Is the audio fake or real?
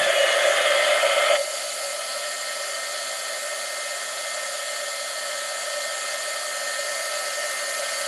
real